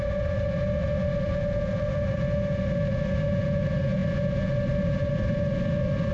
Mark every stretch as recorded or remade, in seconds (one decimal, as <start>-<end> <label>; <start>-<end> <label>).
0.0-6.1 recorded